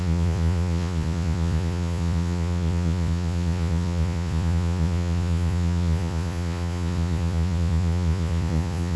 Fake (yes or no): yes